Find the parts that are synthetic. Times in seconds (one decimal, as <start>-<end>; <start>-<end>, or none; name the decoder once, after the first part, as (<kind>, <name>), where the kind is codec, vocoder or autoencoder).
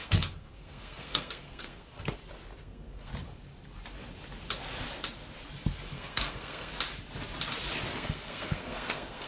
0.0-2.2 (codec, SNAC); 2.6-3.1; 5.9-6.7; 7.9-9.3